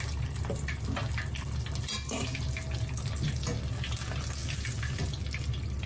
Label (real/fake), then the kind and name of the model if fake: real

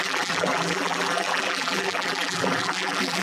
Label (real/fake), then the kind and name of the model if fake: fake, vocoder, BigVGAN v2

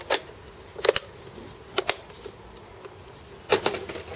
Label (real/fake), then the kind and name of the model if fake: real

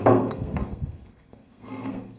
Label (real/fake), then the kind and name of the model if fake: fake, codec, SNAC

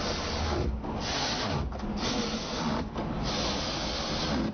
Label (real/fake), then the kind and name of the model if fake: real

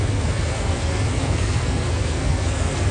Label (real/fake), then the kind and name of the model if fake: fake, codec, SNAC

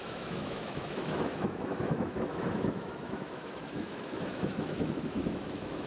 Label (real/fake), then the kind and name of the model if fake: fake, autoencoder, DAC-VAE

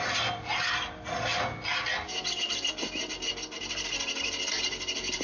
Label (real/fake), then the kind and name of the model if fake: real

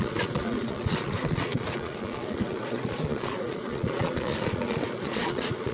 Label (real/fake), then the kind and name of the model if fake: fake, vocoder, Vocos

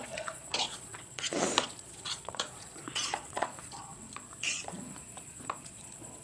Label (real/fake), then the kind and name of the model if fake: fake, vocoder, Vocos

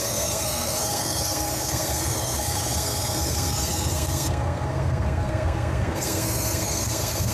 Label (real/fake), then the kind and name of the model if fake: fake, codec, SNAC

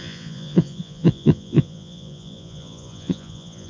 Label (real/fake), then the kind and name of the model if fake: fake, vocoder, Vocos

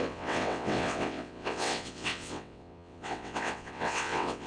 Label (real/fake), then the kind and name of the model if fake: fake, vocoder, WaveNeXt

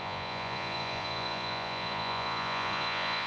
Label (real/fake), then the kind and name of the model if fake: fake, vocoder, Vocos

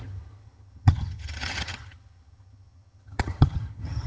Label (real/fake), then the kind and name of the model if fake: fake, vocoder, HiFi-GAN